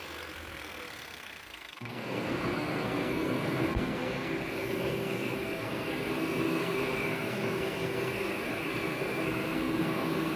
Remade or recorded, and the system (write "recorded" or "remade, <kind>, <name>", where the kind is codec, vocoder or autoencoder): remade, codec, SNAC